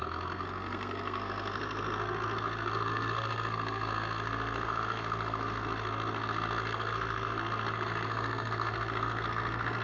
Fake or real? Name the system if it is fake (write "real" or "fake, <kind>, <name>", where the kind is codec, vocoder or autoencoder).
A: fake, codec, SNAC